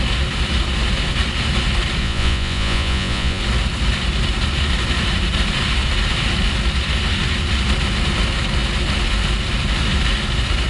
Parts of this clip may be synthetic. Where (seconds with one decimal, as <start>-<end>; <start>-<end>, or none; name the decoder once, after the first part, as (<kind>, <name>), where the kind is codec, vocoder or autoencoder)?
2.0-3.4 (vocoder, Vocos)